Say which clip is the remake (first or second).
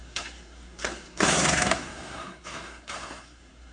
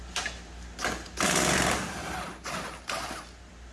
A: first